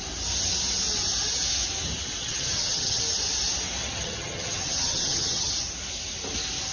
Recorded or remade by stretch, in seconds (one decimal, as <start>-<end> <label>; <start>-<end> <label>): 0.0-2.2 recorded; 2.2-3.0 remade; 3.0-3.8 recorded; 3.8-5.5 remade; 5.5-6.7 recorded